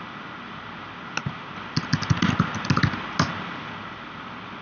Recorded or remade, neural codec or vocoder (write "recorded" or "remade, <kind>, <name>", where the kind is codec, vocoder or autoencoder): recorded